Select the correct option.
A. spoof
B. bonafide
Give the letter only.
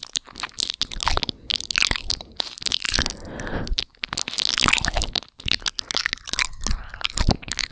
B